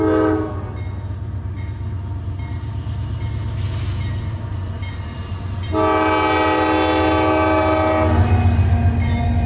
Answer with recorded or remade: recorded